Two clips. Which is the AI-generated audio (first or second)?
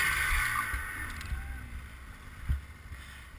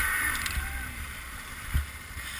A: second